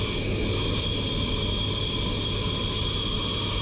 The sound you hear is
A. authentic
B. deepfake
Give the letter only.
A